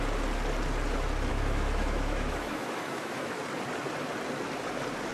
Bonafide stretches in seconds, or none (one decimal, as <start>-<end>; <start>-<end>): 0.0-1.3; 3.4-5.1